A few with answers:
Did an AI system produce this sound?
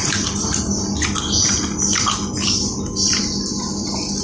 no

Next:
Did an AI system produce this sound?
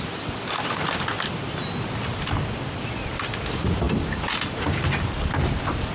no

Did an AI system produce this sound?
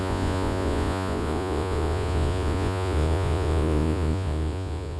yes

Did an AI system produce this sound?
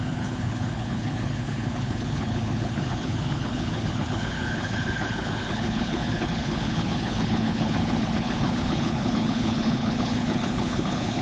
yes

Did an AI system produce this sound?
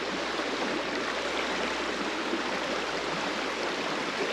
yes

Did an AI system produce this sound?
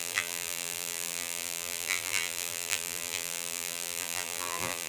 yes